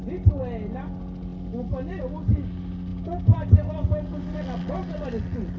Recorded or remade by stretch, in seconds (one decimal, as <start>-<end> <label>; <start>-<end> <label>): 0.0-5.6 recorded